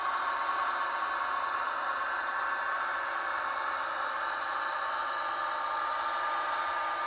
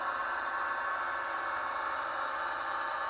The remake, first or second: first